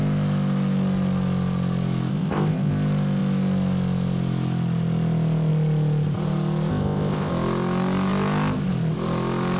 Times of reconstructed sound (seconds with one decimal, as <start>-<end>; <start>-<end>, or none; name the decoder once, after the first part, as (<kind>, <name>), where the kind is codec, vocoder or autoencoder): 2.1-2.7 (codec, ZipCodec); 6.7-7.3